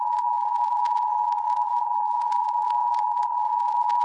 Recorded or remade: remade